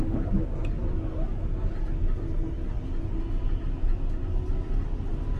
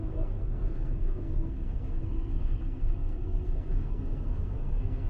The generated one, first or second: second